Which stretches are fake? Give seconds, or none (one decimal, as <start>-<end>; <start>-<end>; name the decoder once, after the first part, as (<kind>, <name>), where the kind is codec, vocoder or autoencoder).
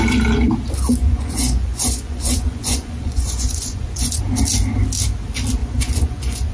1.0-4.2 (vocoder, Vocos); 5.6-6.5